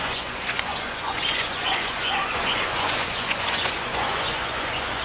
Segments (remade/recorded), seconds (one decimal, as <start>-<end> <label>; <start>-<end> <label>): 0.0-5.0 remade